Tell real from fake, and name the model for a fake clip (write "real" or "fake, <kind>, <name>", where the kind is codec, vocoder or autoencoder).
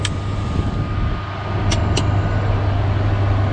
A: real